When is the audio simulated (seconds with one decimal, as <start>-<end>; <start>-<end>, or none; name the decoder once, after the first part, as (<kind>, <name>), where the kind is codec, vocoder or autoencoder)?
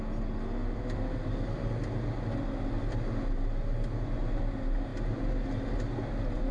0.6-1.3 (vocoder, BigVGAN v2)